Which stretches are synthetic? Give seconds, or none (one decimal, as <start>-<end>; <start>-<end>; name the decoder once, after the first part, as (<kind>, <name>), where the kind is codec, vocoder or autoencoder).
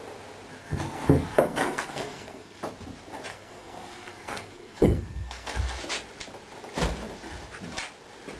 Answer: 0.6-2.6 (codec, SNAC); 3.3-5.8